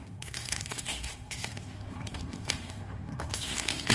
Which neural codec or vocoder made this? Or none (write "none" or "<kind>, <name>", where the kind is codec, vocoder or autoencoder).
codec, SNAC